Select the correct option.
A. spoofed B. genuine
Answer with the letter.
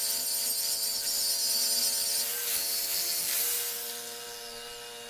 B